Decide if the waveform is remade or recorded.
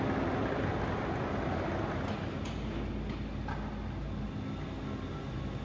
recorded